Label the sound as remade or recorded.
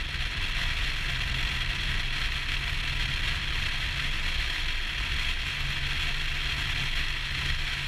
recorded